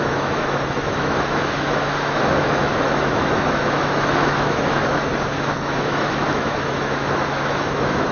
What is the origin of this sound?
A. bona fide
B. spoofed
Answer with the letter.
B